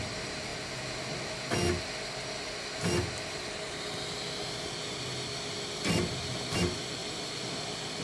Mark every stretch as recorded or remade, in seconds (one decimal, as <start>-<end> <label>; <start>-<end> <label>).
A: 0.0-0.5 remade; 0.5-1.8 recorded; 1.8-8.0 remade